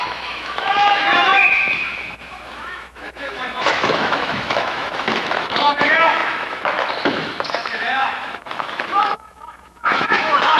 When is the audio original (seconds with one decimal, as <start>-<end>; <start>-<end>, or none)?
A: none